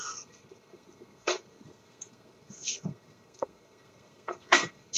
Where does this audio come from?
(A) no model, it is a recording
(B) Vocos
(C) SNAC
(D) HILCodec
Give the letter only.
C